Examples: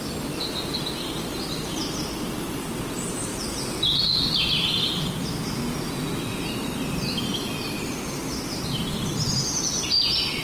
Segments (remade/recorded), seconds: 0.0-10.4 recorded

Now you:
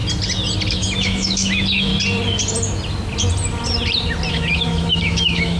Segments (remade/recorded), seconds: 0.0-0.7 recorded; 0.7-1.9 remade; 1.9-4.3 recorded; 4.3-5.6 remade